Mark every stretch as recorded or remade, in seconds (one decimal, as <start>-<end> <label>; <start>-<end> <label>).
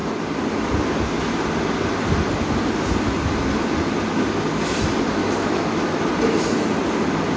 0.0-5.2 recorded; 5.2-6.0 remade; 6.0-7.4 recorded